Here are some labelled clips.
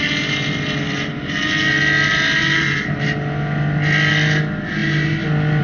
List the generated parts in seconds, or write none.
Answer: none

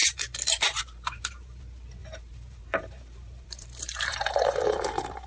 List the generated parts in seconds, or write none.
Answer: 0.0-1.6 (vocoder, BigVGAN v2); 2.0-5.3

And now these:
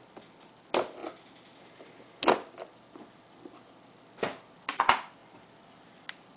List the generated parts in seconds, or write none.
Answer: none

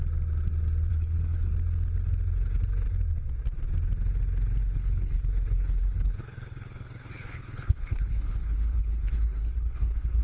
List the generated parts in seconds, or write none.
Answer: 0.9-1.5 (codec, HILCodec); 4.6-10.2

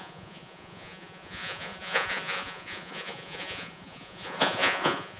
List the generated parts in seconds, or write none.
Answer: 0.0-5.2 (vocoder, Vocos)